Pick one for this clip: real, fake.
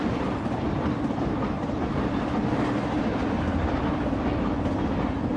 real